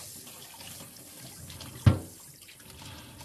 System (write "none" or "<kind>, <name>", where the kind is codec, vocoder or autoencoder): none